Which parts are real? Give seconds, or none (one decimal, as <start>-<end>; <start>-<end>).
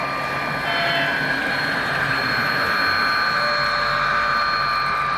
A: 0.0-1.4; 2.3-5.2